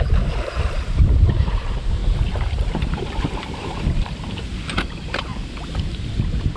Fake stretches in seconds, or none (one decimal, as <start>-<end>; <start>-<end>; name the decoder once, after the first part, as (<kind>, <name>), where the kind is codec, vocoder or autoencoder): 0.0-5.3 (vocoder, BigVGAN v2)